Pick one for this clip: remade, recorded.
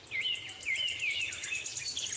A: recorded